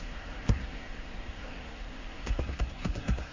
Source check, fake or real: fake